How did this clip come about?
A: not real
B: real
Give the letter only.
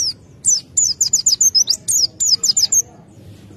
B